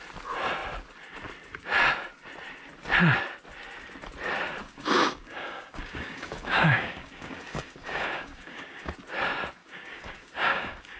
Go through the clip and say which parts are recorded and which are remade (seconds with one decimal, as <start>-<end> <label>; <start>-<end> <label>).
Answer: 0.0-4.6 recorded; 4.6-8.9 remade; 8.9-9.6 recorded; 9.6-11.0 remade